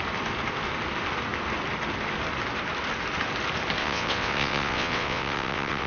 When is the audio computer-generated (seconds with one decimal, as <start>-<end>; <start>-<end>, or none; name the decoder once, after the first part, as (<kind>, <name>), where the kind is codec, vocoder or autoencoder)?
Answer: 3.8-5.9 (vocoder, WaveNeXt)